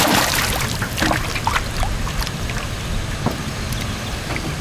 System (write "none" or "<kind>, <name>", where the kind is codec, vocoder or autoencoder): none